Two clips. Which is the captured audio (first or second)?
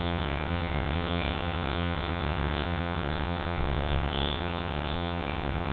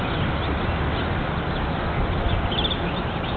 second